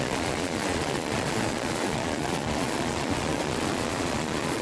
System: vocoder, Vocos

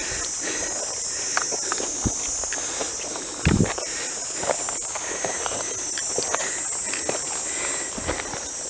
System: none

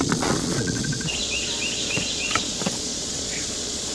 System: vocoder, Vocos